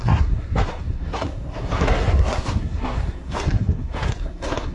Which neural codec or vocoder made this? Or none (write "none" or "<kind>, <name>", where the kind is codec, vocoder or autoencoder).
codec, SNAC